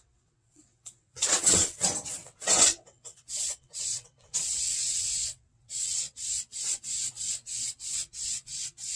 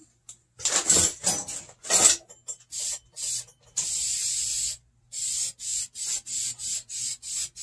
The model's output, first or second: first